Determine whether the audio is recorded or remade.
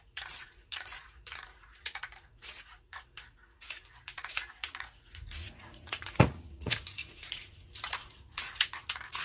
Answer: remade